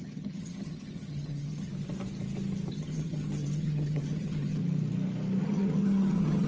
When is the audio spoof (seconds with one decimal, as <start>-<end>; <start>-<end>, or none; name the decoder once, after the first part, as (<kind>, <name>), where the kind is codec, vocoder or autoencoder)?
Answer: 0.0-1.7 (vocoder, HiFi-GAN); 2.7-4.6; 5.4-6.5